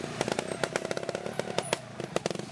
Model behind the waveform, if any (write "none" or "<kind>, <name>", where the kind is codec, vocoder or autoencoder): none